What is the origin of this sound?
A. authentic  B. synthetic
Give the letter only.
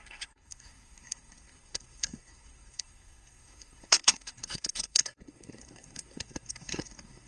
B